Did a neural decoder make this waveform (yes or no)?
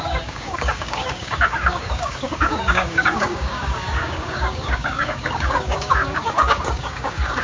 yes